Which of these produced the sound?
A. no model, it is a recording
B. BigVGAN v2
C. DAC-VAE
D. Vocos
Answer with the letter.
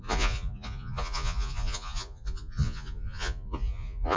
D